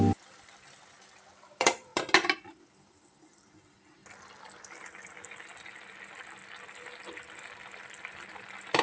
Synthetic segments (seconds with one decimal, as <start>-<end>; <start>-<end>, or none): 0.0-1.9; 2.4-4.0; 6.9-8.8